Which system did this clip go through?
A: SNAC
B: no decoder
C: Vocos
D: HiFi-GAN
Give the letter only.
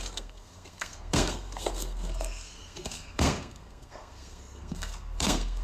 A